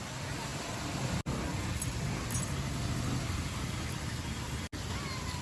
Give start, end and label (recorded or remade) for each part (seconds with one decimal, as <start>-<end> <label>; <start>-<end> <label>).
0.0-5.4 recorded